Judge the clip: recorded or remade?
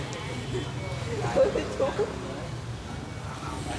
recorded